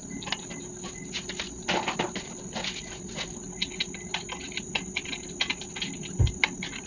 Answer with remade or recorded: recorded